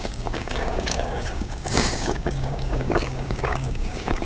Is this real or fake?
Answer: fake